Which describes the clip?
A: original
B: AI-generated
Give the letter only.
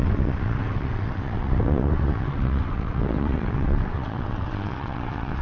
B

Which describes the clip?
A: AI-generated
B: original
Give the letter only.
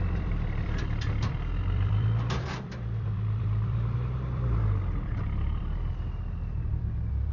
A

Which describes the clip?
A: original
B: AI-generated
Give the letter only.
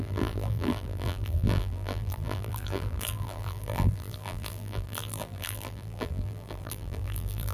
B